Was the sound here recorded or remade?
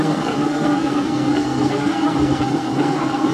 remade